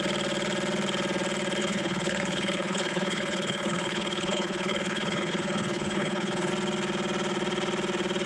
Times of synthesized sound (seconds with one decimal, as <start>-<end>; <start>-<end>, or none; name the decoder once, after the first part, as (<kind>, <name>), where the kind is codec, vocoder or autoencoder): 1.6-6.5 (codec, HILCodec)